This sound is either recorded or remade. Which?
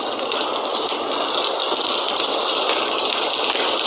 recorded